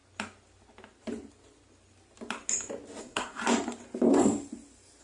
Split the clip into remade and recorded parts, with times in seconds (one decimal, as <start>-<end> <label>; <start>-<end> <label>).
0.0-3.0 recorded; 3.0-3.4 remade; 3.4-5.0 recorded